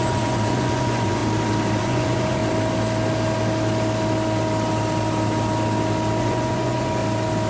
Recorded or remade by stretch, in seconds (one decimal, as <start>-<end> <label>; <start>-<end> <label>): 0.0-1.2 remade; 1.2-1.8 recorded; 1.8-2.4 remade; 2.4-6.2 recorded; 6.2-7.0 remade; 7.0-7.5 recorded

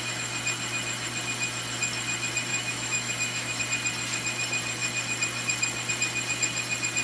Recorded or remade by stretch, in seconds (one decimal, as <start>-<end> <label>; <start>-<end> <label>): 0.0-2.5 recorded; 2.5-3.6 remade; 3.6-7.0 recorded

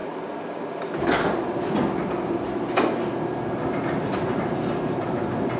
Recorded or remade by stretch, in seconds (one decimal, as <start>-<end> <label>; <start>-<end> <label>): 0.0-5.6 recorded

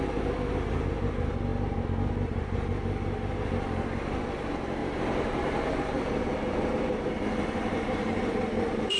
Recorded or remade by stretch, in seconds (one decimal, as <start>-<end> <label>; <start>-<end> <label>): 0.0-4.8 recorded; 4.8-9.0 remade

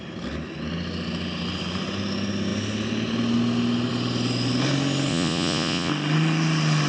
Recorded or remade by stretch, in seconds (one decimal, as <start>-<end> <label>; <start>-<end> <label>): 0.0-5.1 recorded; 5.1-5.9 remade; 5.9-6.9 recorded

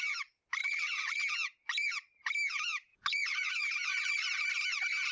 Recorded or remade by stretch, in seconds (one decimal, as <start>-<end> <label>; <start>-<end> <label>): 0.0-0.6 recorded; 0.6-1.2 remade; 1.2-2.9 recorded; 2.9-3.5 remade; 3.5-3.9 recorded; 3.9-4.5 remade; 4.5-5.1 recorded

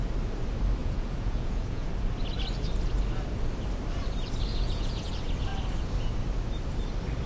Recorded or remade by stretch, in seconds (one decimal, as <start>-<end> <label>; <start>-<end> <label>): 0.0-0.8 recorded; 0.8-1.9 remade; 1.9-4.5 recorded; 4.5-5.1 remade; 5.1-7.3 recorded